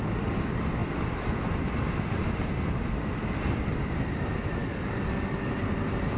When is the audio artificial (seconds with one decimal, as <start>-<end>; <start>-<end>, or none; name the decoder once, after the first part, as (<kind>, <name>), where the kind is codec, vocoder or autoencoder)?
4.6-5.5 (codec, DAC)